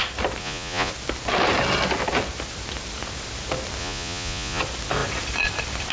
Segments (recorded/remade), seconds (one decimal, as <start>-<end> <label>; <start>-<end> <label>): 0.0-0.4 recorded; 0.4-0.9 remade; 0.9-3.8 recorded; 3.8-4.6 remade; 4.6-5.9 recorded